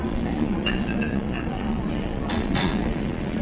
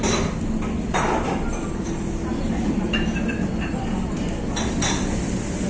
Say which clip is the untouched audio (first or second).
second